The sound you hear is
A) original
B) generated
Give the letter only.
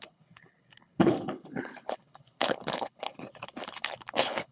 B